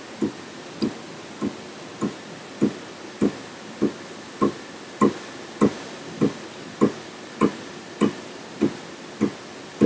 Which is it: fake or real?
real